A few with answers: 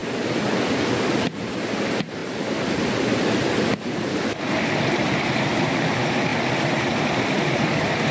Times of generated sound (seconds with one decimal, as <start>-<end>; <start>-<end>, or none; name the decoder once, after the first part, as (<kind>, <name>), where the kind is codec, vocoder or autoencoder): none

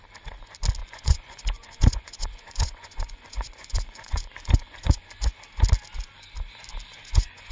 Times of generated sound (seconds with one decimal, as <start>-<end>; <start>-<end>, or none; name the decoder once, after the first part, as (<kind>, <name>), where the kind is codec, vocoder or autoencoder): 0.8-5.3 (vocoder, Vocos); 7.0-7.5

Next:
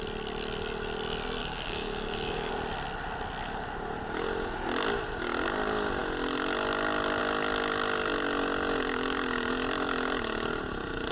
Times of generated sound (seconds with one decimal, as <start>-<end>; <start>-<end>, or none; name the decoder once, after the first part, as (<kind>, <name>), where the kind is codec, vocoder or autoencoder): 1.4-2.5 (codec, DAC)

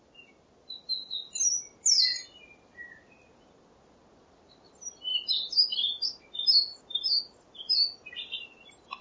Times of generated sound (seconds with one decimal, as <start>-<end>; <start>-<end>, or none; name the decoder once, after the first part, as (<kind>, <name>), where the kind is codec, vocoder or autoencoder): none

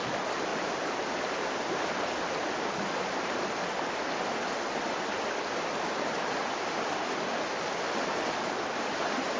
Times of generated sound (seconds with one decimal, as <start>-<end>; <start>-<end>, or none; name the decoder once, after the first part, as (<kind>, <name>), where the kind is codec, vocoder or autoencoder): none

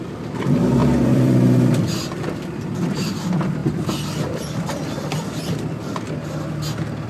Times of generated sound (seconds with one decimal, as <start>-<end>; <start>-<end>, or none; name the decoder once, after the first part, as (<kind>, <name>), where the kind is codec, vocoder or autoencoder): 0.8-3.2 (vocoder, BigVGAN v2); 3.6-5.5

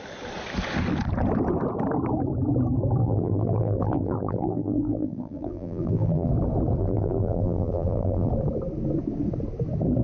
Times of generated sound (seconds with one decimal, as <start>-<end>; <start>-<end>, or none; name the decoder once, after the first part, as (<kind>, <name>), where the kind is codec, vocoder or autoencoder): 3.0-6.3 (vocoder, BigVGAN v2); 6.8-8.3

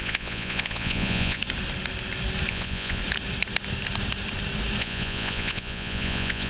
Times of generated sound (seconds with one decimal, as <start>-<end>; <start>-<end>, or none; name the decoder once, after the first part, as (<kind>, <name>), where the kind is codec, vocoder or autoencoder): 0.0-1.4 (vocoder, Vocos); 2.5-3.0; 4.8-6.5